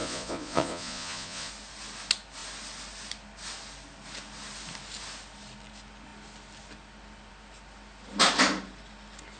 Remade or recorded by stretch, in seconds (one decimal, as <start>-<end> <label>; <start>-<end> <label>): 0.0-1.5 remade; 1.5-9.4 recorded